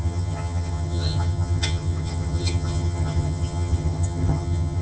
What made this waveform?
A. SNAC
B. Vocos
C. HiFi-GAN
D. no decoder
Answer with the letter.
C